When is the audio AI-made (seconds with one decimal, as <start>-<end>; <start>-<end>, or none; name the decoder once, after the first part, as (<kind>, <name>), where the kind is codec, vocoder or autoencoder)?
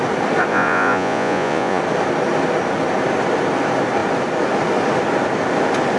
0.5-1.8 (vocoder, Vocos)